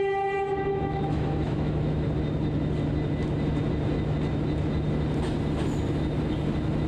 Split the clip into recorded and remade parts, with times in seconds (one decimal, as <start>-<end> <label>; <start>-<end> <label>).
0.0-0.7 recorded; 0.7-2.1 remade; 2.1-6.9 recorded